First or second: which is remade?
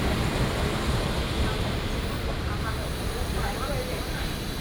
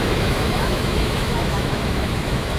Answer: second